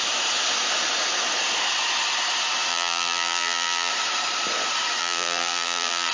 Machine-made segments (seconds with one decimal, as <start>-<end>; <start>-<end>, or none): 2.7-3.9; 5.0-6.1